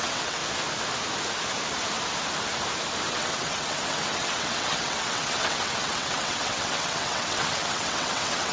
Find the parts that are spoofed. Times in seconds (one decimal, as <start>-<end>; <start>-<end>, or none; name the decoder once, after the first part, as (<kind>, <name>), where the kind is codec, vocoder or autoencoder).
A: 0.0-0.4 (vocoder, WaveNeXt); 3.1-8.5